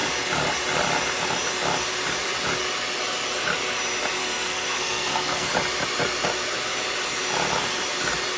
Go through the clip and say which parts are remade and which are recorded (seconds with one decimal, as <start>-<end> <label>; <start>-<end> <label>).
0.0-4.2 recorded; 4.2-5.5 remade; 5.5-8.4 recorded